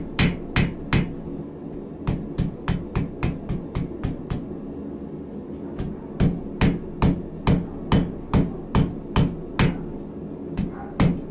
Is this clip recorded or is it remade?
recorded